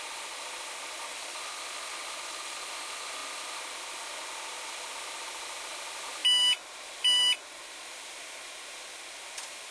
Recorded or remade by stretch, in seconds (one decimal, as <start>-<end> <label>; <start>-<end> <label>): 0.0-6.2 recorded; 6.2-9.7 remade